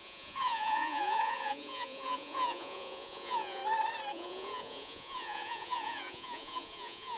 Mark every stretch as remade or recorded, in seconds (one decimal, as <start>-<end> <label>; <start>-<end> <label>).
0.0-3.6 remade; 3.6-4.1 recorded; 4.1-7.2 remade